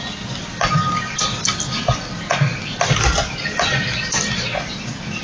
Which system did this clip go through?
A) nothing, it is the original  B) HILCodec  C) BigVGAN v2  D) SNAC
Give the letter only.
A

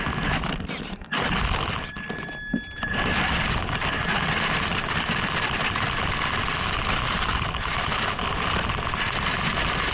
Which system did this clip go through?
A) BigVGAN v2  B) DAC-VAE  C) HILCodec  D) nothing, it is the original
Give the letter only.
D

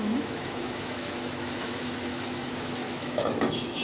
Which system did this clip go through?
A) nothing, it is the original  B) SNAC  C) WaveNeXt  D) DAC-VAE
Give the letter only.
D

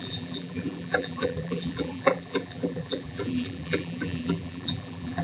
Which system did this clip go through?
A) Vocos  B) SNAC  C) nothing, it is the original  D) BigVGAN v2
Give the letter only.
D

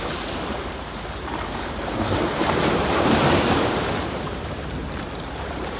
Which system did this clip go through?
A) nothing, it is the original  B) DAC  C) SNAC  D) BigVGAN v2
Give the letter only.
D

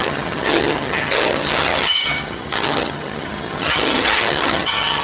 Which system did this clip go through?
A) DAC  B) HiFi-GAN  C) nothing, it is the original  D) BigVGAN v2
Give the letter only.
B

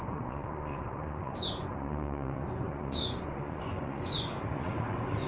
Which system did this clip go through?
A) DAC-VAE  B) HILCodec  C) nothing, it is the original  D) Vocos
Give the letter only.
D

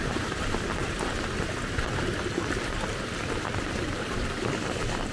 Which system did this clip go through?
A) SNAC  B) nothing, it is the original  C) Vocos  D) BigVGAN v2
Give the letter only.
B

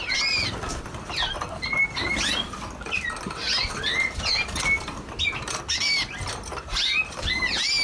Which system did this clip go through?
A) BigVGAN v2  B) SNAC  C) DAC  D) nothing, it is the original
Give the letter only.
D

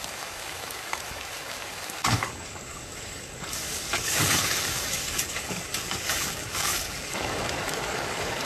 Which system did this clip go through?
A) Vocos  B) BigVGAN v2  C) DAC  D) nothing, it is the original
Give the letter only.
C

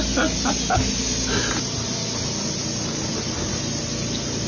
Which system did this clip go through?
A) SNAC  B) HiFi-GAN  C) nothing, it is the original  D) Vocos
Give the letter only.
C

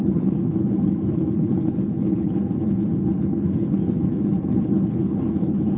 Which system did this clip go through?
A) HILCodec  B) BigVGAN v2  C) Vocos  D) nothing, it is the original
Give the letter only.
A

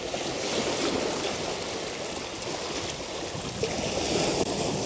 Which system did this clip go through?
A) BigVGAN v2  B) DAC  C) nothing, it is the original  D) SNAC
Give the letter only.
C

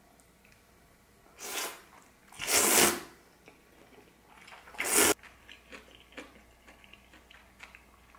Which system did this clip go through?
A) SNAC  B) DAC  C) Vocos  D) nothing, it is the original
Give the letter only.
D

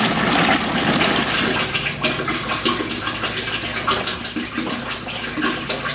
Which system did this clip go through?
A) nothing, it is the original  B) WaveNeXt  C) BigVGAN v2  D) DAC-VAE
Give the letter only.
A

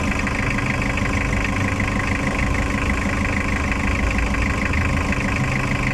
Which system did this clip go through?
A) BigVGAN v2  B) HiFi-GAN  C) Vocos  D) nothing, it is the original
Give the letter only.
D